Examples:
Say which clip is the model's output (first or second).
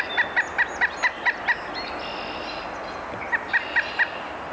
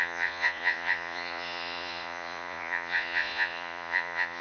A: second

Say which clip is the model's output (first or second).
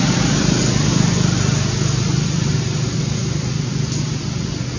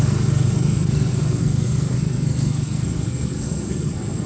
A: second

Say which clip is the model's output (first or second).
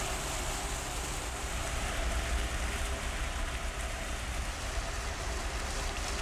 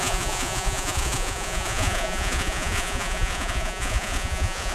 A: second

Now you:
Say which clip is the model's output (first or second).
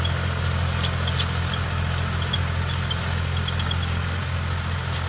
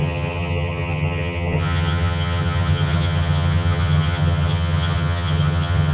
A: second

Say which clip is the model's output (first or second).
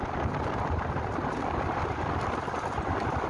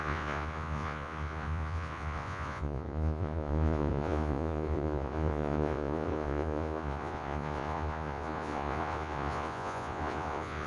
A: second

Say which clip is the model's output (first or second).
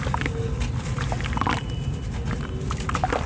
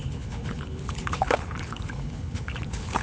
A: second